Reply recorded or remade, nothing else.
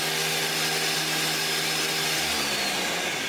recorded